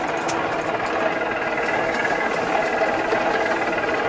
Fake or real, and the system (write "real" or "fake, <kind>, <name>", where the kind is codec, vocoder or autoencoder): real